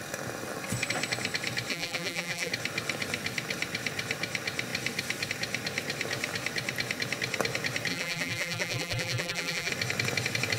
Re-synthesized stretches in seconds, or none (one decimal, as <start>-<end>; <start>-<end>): 1.7-2.5; 7.9-9.7